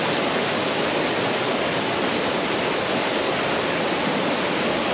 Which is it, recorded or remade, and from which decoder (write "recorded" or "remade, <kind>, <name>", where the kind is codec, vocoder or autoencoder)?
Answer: recorded